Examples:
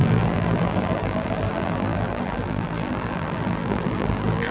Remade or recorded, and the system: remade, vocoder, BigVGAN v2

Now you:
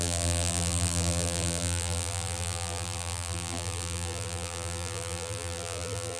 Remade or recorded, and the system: remade, vocoder, BigVGAN v2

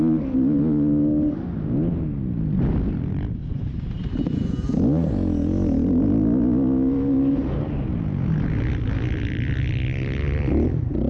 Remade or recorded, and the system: recorded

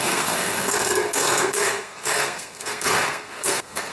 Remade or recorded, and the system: remade, codec, SNAC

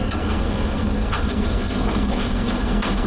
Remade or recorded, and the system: remade, codec, SNAC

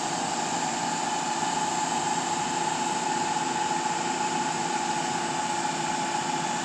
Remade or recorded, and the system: recorded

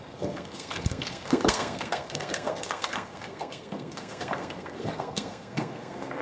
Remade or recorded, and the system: remade, codec, SNAC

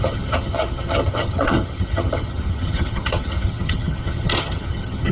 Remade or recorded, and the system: remade, vocoder, HiFi-GAN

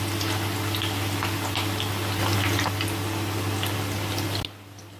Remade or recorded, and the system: recorded